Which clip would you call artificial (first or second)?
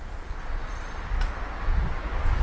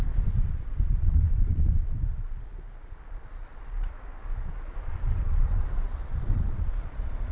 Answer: second